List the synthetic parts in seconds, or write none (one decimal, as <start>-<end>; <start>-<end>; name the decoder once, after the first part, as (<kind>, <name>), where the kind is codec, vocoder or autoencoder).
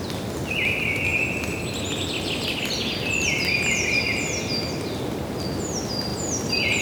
none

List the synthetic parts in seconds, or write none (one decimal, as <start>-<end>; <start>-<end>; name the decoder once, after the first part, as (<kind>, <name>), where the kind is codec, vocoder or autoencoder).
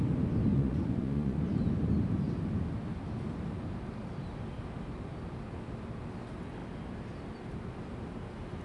0.5-1.4 (vocoder, Vocos)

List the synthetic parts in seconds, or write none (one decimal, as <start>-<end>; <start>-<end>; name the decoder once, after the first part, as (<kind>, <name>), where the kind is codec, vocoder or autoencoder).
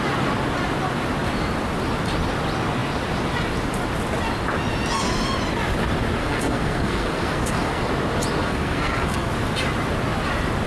6.2-7.9 (codec, SNAC); 8.4-9.3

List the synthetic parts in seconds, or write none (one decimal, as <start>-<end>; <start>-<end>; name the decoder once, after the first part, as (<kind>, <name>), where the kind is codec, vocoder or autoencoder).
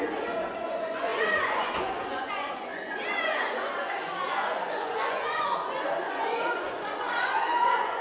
0.0-8.0 (vocoder, Vocos)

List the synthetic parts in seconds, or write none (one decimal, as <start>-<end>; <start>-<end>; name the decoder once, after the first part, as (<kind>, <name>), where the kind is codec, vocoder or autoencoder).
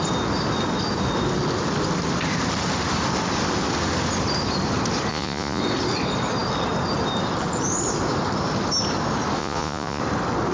5.1-5.6 (vocoder, Vocos); 9.4-10.0